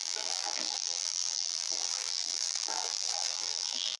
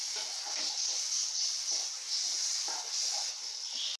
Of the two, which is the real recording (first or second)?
second